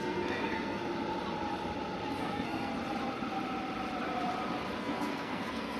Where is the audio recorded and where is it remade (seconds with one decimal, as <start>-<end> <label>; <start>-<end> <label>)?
0.0-0.8 remade; 0.8-2.2 recorded; 2.2-2.7 remade; 2.7-4.8 recorded; 4.8-5.8 remade